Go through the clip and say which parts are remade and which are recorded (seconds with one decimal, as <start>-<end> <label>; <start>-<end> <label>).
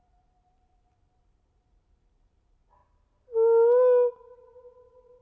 0.0-2.8 remade; 2.8-4.1 recorded; 4.1-5.2 remade